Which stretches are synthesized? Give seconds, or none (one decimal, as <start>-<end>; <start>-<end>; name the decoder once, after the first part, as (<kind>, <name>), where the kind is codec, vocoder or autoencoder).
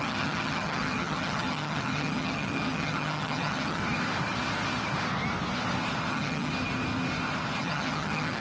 0.0-3.8 (vocoder, HiFi-GAN); 6.1-6.5; 7.6-8.4